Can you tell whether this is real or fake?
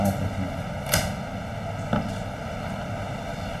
real